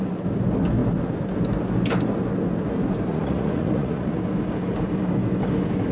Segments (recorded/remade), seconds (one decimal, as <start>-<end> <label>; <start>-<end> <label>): 0.0-3.1 recorded; 3.1-4.2 remade; 4.2-5.9 recorded